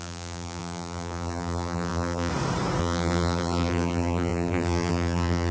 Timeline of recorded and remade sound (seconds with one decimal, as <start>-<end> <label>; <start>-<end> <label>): 0.0-2.3 remade; 2.3-2.8 recorded; 2.8-5.5 remade

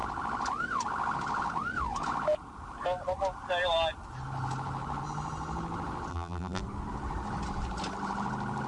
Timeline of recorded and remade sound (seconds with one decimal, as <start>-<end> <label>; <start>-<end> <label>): 0.0-6.1 recorded; 6.1-6.6 remade; 6.6-8.7 recorded

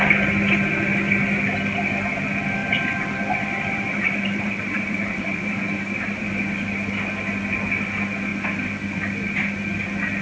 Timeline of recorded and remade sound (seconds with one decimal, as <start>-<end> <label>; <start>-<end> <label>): 0.0-2.6 recorded; 2.6-6.3 remade; 6.3-10.2 recorded

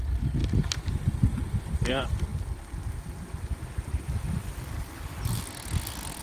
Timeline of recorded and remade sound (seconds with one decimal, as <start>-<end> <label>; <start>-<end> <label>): 0.0-6.2 recorded

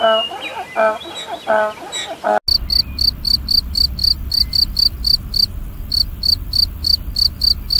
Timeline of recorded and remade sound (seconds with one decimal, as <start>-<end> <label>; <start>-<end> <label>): 0.0-4.0 recorded; 4.0-4.5 remade; 4.5-7.8 recorded

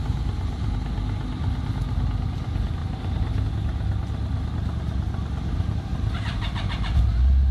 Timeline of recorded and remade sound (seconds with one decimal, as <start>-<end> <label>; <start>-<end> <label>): 0.0-0.7 remade; 0.7-2.8 recorded; 2.8-3.4 remade; 3.4-5.9 recorded; 5.9-6.4 remade; 6.4-7.5 recorded